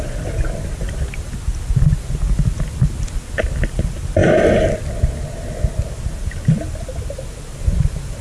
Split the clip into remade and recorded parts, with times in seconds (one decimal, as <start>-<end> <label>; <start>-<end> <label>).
0.0-8.2 recorded